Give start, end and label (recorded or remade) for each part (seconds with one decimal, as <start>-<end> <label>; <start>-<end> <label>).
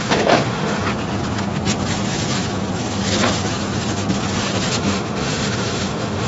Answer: 0.0-0.9 remade; 0.9-4.7 recorded; 4.7-6.3 remade